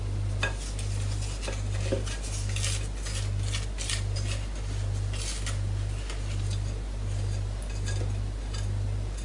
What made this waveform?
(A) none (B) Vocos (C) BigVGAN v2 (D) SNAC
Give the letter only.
A